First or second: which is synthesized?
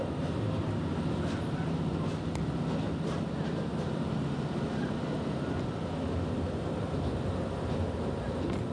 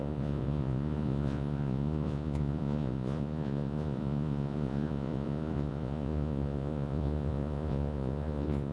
second